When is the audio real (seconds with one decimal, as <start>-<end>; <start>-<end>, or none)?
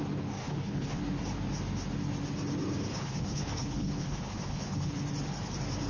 0.0-0.4; 1.0-2.9; 4.9-5.9